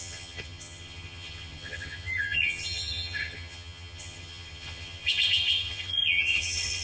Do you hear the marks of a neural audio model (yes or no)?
yes